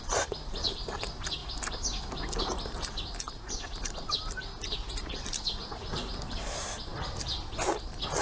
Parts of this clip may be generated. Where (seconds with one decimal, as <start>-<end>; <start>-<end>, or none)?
0.0-1.4; 2.4-8.2